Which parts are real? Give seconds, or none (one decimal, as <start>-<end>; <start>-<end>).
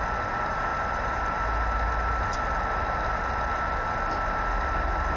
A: 0.0-0.7; 1.4-2.1; 3.2-5.2